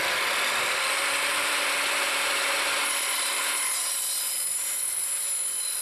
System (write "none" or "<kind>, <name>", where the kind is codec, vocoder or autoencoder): none